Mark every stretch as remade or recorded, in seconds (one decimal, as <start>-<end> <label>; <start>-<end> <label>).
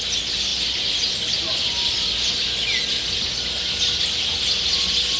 0.0-5.2 recorded